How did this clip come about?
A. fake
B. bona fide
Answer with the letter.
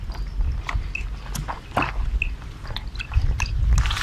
B